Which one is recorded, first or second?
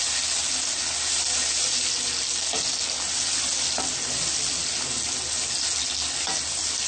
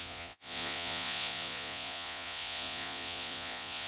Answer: first